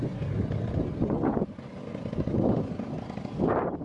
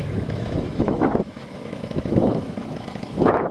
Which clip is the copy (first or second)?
second